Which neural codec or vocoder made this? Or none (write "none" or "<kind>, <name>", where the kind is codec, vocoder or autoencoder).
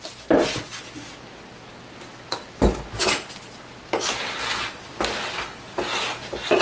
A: none